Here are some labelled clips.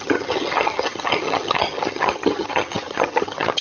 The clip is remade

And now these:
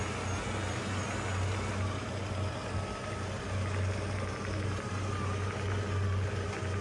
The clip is recorded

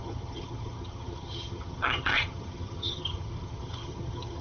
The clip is remade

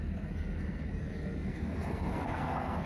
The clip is remade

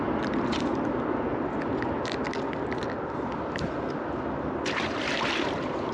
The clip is recorded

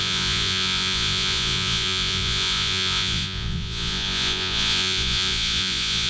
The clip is remade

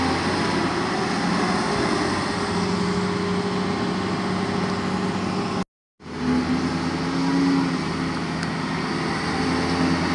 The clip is recorded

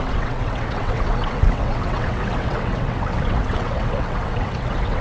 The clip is remade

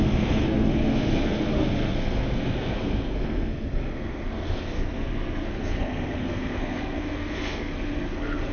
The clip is remade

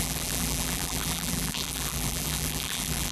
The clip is remade